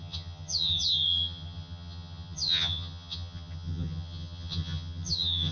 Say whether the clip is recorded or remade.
remade